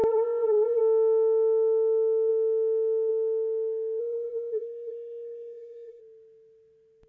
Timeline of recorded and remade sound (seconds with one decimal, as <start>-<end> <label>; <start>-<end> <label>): 0.0-0.8 remade; 0.8-4.0 recorded; 4.0-6.0 remade; 6.0-7.1 recorded